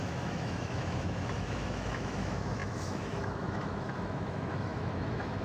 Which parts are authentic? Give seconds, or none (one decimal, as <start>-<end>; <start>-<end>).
none